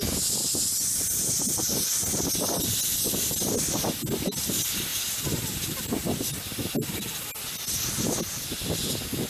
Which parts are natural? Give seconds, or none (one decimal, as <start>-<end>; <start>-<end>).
0.0-9.3